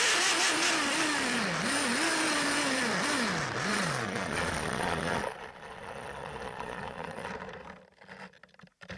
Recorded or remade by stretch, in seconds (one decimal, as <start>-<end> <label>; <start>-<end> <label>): 0.0-3.7 recorded; 3.7-7.3 remade; 7.3-9.0 recorded